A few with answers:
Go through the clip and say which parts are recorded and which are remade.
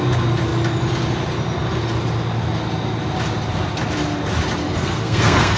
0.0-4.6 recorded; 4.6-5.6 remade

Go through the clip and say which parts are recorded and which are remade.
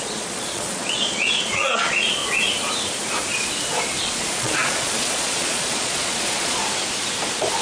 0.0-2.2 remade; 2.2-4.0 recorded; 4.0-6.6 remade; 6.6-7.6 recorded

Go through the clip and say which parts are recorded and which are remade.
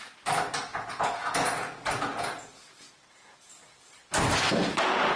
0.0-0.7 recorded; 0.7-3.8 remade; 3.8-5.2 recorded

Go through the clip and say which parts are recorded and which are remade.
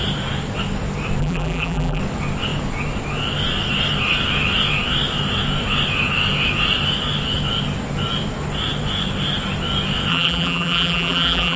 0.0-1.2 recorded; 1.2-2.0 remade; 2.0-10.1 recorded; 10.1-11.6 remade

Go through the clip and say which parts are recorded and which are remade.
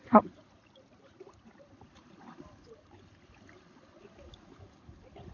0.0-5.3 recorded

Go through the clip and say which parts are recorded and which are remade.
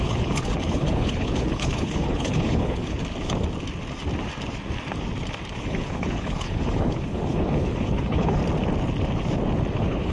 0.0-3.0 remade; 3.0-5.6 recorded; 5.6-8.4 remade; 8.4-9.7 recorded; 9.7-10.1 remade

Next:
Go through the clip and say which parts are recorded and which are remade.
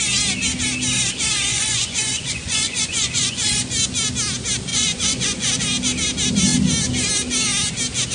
0.0-1.5 recorded; 1.5-3.6 remade; 3.6-4.7 recorded; 4.7-5.6 remade; 5.6-8.1 recorded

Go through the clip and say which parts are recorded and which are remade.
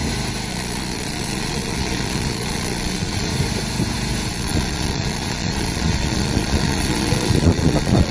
0.0-0.5 recorded; 0.5-3.3 remade; 3.3-4.3 recorded; 4.3-8.1 remade